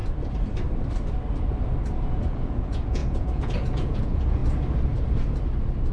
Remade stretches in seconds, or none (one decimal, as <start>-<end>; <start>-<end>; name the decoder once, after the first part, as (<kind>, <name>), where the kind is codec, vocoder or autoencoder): 2.1-4.4 (vocoder, Vocos)